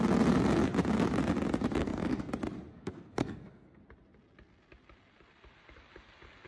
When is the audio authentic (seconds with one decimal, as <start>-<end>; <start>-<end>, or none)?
0.0-1.8; 2.3-2.7; 3.8-6.5